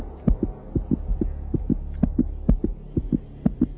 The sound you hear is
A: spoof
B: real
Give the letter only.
B